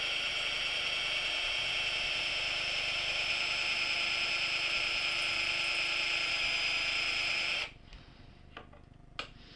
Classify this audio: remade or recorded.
recorded